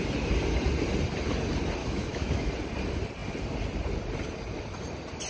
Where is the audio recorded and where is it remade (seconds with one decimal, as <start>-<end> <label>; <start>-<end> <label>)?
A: 0.0-1.8 recorded; 1.8-2.5 remade; 2.5-5.3 recorded